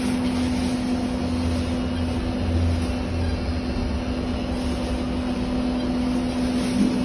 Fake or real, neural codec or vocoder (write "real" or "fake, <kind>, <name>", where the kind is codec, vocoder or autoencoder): real